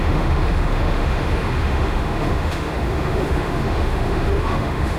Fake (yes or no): yes